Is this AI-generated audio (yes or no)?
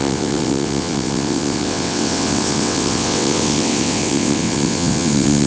yes